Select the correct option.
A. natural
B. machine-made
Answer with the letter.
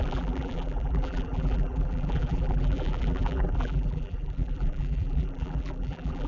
B